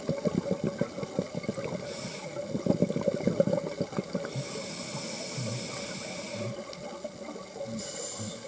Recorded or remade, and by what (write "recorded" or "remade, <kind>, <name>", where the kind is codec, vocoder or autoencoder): recorded